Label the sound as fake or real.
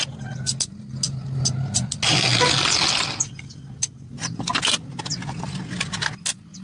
real